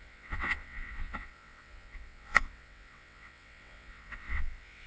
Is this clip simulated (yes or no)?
yes